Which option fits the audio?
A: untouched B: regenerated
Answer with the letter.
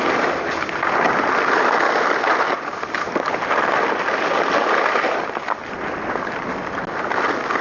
A